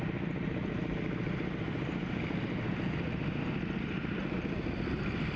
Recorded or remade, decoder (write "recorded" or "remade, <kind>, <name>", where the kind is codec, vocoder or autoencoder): recorded